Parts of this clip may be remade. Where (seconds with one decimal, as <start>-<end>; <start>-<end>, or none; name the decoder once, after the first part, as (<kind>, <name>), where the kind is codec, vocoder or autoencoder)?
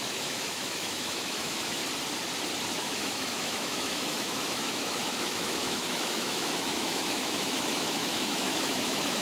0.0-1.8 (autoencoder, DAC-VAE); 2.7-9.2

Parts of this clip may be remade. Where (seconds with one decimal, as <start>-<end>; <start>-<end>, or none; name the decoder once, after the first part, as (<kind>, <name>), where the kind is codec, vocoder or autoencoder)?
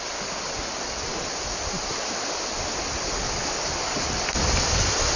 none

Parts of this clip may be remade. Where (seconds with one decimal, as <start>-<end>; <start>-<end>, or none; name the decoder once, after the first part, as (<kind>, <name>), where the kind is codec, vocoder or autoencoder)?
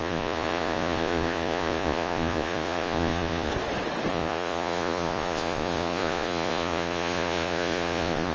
0.0-3.5 (vocoder, Vocos); 4.1-8.3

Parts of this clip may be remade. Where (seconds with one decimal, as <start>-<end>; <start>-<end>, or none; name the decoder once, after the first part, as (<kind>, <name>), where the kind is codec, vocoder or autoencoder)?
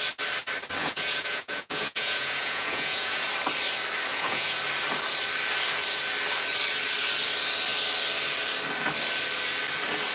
0.8-3.3 (vocoder, Vocos); 4.1-4.6